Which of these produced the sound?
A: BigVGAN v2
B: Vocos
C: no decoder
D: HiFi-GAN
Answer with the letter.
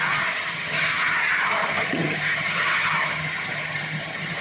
D